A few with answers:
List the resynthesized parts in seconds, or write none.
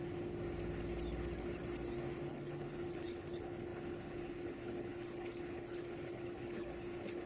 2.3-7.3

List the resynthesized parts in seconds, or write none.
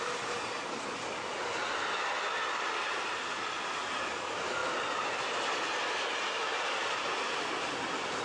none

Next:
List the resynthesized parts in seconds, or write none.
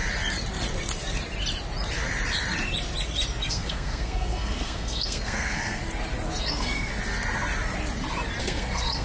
3.4-5.8; 6.4-6.9; 8.4-9.0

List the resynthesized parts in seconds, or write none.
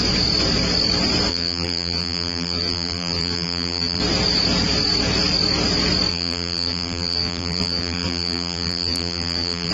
1.3-4.0; 6.1-9.7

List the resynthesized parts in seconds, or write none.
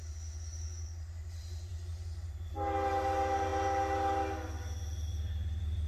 none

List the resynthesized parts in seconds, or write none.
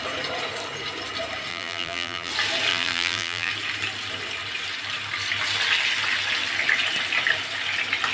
1.5-2.3; 2.7-3.5